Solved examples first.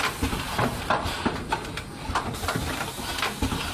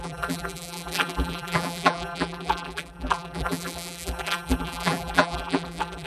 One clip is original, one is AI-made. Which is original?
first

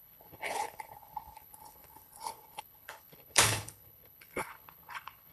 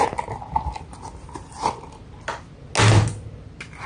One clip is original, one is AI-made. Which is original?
second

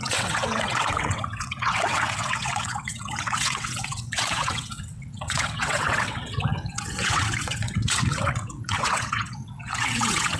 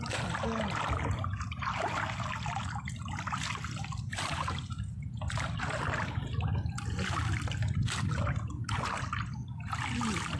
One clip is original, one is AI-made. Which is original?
second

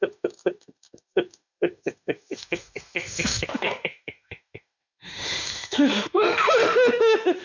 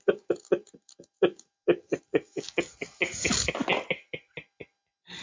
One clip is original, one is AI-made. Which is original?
second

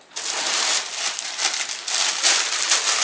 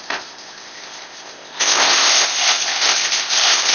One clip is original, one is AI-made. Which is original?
first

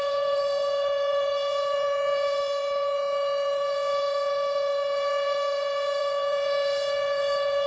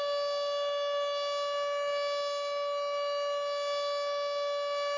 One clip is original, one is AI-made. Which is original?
second